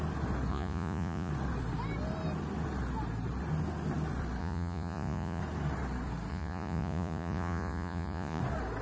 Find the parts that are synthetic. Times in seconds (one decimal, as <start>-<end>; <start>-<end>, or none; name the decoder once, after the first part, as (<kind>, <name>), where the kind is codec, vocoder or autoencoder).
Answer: 0.5-1.3 (vocoder, Vocos); 4.4-5.4; 6.3-8.4